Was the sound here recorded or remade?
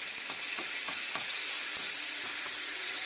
remade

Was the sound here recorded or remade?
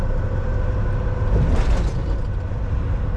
recorded